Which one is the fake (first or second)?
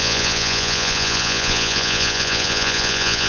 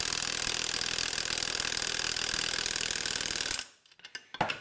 first